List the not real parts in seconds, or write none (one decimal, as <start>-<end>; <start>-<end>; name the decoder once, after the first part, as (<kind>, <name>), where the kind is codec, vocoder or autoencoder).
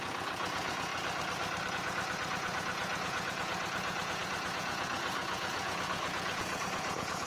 0.0-0.9 (vocoder, Vocos); 1.7-7.3